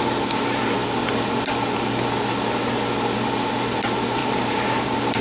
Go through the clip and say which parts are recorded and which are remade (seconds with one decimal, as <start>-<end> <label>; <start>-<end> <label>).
0.0-4.2 recorded; 4.2-5.2 remade